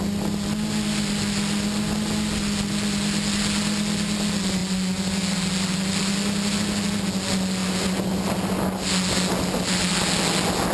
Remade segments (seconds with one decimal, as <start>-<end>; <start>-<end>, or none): none